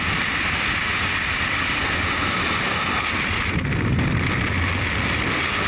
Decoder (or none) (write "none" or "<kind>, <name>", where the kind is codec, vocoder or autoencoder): none